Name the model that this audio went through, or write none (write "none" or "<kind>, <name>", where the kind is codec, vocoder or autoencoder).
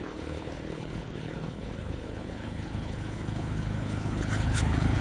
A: codec, HILCodec